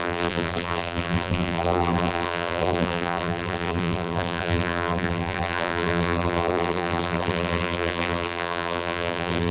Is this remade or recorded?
remade